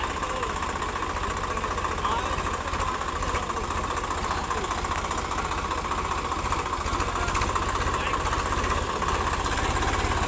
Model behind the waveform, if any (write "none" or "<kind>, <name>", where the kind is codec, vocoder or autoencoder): none